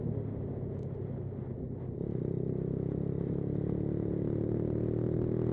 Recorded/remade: recorded